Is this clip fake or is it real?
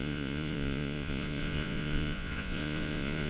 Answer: fake